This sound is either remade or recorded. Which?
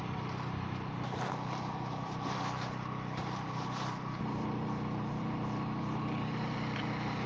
remade